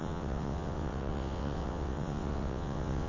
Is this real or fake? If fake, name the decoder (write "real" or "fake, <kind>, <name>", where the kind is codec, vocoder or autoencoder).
fake, vocoder, WaveNeXt